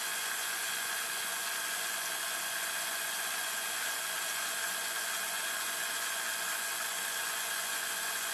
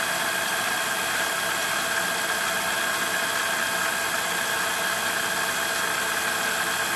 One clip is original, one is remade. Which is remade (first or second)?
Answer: first